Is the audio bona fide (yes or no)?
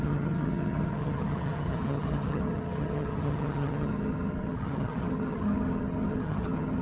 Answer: no